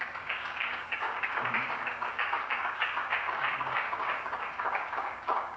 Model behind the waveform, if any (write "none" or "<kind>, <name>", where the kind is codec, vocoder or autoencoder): codec, DAC